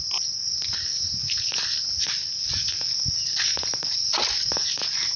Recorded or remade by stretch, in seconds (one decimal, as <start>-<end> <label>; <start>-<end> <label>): 0.0-5.2 recorded